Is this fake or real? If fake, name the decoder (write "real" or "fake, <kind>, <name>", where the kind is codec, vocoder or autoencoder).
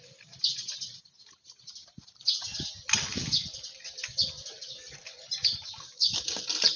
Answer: real